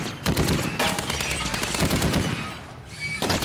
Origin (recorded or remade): recorded